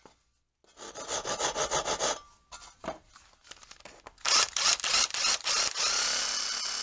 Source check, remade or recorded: recorded